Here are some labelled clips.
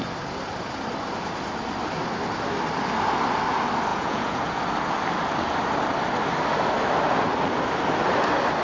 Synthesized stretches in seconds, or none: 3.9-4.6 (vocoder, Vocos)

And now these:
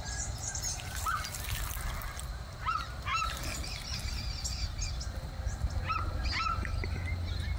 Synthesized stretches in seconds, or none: none

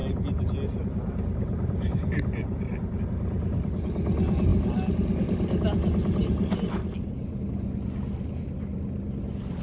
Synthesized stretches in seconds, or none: none

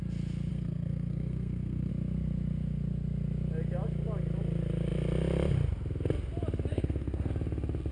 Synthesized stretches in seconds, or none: 0.5-1.9 (codec, SNAC); 6.7-7.3

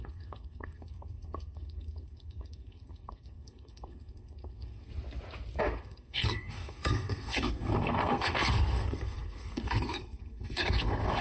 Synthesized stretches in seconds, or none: 0.0-4.9 (codec, SNAC); 5.6-11.2